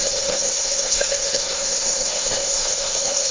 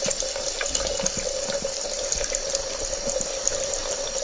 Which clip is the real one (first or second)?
second